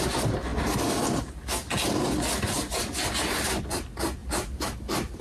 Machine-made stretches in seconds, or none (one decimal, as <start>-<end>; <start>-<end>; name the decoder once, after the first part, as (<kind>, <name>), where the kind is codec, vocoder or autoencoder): 4.2-4.8 (vocoder, BigVGAN v2)